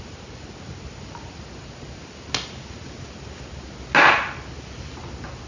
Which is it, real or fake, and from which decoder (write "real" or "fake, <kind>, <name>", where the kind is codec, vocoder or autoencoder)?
real